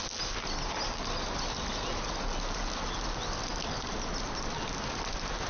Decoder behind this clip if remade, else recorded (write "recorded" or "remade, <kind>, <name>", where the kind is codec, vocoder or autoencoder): recorded